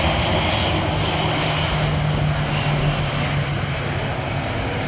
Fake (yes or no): no